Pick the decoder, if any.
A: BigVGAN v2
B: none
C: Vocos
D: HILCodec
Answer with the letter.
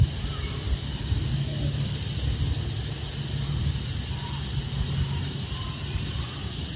B